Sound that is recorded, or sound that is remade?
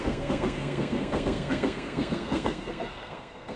remade